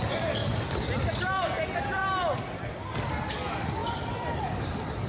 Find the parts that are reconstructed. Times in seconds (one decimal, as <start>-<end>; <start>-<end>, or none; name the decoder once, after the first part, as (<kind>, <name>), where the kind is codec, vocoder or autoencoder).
none

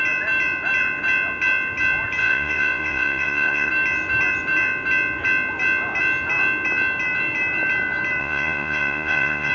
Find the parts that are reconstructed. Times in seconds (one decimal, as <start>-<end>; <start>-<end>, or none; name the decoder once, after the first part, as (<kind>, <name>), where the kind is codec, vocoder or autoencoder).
2.2-3.7 (vocoder, Vocos); 8.2-9.5